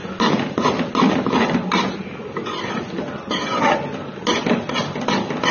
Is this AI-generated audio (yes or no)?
no